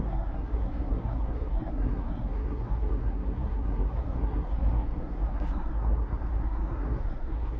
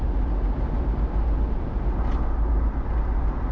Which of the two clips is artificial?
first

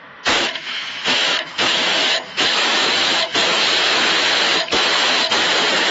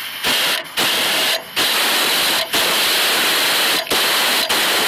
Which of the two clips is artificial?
first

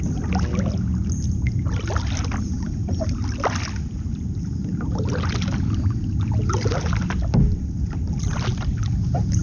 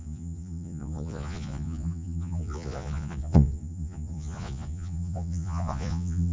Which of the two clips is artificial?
second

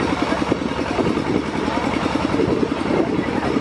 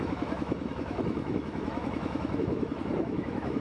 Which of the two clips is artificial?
second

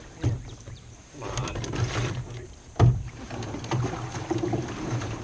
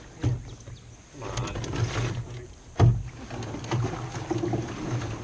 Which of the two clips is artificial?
first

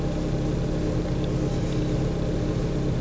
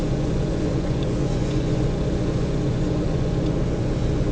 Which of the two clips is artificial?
second